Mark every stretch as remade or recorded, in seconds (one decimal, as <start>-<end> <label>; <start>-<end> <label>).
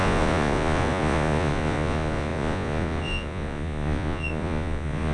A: 0.0-5.1 remade